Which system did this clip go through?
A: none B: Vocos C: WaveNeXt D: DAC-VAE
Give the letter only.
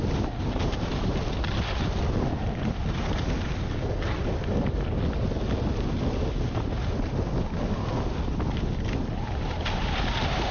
A